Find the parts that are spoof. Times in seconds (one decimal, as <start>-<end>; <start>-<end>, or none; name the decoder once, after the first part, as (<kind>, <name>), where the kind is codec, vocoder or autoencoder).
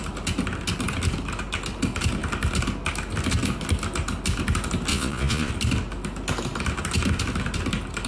4.9-5.5 (vocoder, Vocos)